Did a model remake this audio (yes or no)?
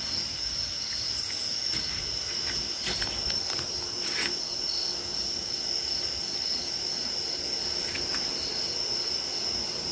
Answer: no